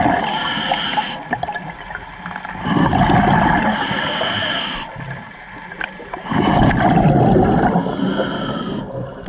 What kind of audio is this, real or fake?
real